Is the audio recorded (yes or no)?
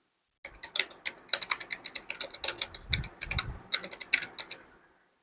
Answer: yes